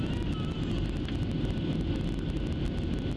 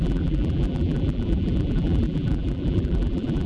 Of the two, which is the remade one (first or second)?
second